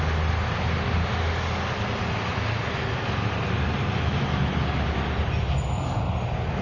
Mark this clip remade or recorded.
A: recorded